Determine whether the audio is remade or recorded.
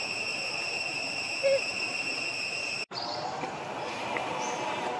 remade